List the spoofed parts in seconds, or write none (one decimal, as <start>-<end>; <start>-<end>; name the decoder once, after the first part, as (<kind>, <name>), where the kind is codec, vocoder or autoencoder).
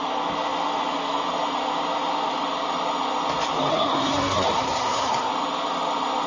3.7-5.3 (codec, SNAC)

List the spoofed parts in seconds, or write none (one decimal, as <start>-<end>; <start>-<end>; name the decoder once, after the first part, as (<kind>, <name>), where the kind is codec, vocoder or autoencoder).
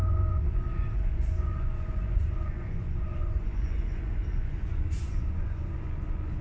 0.0-6.4 (vocoder, Vocos)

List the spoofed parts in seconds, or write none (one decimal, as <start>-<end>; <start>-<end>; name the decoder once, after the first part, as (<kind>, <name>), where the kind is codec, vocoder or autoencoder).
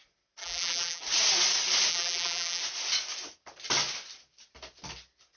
0.4-1.0 (vocoder, BigVGAN v2); 1.9-2.6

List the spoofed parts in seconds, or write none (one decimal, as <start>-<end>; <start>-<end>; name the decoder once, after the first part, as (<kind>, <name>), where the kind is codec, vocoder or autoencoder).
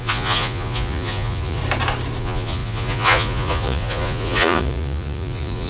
0.0-1.6 (vocoder, Vocos); 2.2-5.7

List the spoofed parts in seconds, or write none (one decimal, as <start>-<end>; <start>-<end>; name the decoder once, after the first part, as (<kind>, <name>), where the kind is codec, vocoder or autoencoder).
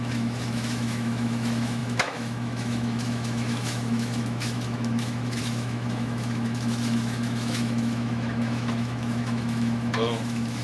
0.0-10.6 (autoencoder, DAC-VAE)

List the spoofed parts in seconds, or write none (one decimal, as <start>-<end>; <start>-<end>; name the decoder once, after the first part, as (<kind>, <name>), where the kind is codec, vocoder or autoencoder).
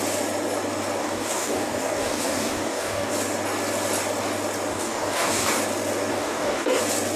1.0-3.1 (codec, DAC); 4.7-5.6; 6.1-6.8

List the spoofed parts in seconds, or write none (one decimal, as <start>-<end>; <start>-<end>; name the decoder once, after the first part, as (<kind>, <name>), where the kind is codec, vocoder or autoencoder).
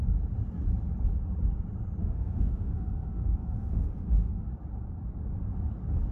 2.0-4.5 (autoencoder, DAC-VAE)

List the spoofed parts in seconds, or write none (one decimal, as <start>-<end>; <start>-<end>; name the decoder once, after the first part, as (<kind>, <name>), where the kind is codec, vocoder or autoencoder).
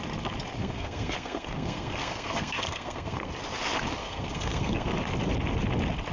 0.6-3.3 (codec, SNAC); 4.0-4.9